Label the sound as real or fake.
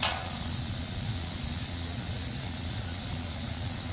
fake